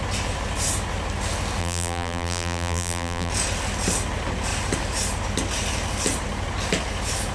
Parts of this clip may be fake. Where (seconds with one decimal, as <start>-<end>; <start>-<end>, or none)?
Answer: 1.6-3.3